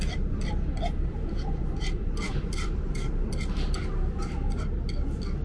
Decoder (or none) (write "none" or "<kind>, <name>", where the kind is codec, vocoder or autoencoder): vocoder, BigVGAN v2